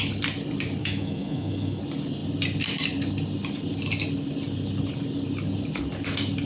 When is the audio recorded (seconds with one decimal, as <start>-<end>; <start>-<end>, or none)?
0.0-0.8; 1.8-6.5